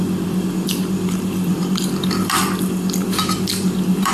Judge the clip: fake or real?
fake